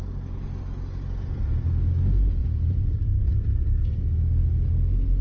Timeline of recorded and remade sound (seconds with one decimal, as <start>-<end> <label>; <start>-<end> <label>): 0.0-2.4 recorded; 2.4-3.8 remade; 3.8-5.2 recorded